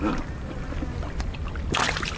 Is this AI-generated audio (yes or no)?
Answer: no